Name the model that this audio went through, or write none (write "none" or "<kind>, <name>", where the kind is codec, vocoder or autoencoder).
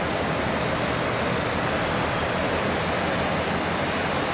none